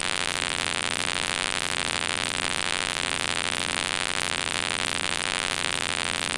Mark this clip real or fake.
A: fake